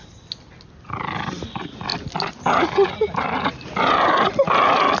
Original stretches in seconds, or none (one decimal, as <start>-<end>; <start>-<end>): 0.0-5.0